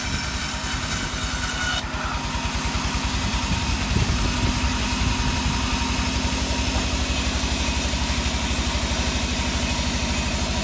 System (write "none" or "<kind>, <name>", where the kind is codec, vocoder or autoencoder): none